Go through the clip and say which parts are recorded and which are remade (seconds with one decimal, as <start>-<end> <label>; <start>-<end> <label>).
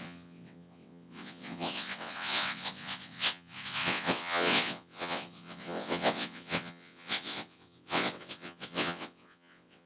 0.0-9.9 remade